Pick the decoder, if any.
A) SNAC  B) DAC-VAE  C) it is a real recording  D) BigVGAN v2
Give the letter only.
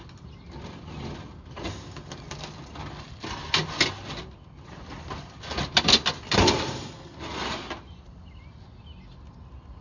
C